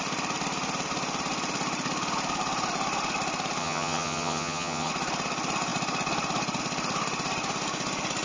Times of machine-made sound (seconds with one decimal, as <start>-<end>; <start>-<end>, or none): 3.6-4.9